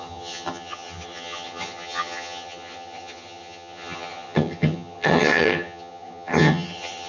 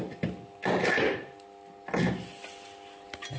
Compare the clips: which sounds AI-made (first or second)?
first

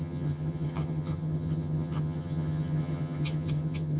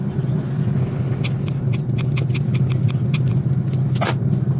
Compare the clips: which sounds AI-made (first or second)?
first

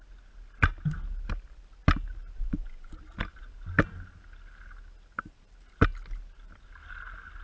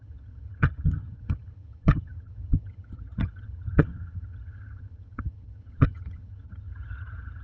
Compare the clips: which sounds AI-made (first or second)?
second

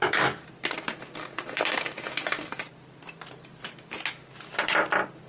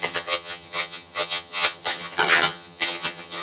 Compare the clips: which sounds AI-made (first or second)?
second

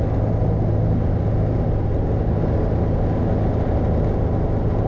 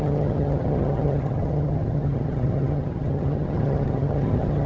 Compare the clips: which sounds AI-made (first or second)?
second